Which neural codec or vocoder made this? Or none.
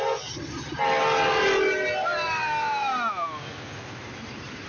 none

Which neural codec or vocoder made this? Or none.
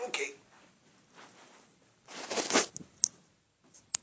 none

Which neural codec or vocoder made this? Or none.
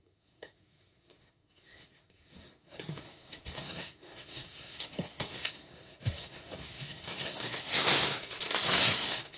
codec, SNAC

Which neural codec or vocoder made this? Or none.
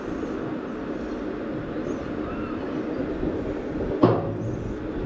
none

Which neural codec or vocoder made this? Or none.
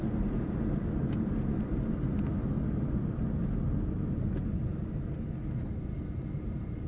none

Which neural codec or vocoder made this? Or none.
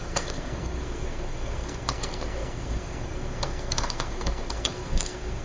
codec, SNAC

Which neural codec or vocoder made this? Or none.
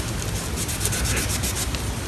none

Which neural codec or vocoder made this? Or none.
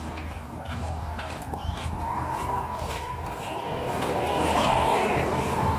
codec, DAC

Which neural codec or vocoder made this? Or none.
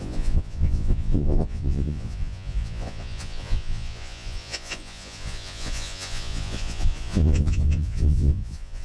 vocoder, Vocos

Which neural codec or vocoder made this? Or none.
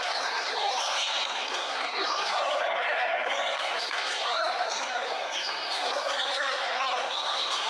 codec, SNAC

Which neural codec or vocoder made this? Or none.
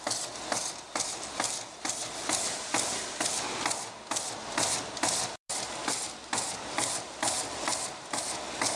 none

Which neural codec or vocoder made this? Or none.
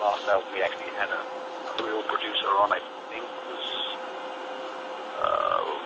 none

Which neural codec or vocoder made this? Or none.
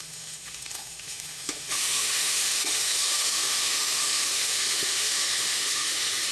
autoencoder, DAC-VAE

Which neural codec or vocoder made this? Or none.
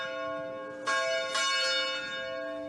none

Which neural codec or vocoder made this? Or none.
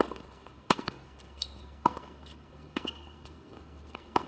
codec, SNAC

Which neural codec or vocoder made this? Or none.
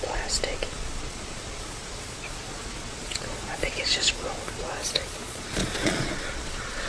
vocoder, Vocos